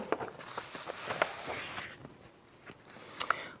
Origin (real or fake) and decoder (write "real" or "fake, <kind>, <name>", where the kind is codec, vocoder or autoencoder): real